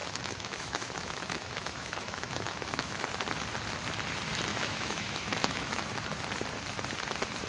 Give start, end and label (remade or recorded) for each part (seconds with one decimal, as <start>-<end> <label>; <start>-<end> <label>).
0.0-3.0 remade; 3.0-4.5 recorded; 4.5-5.8 remade; 5.8-7.5 recorded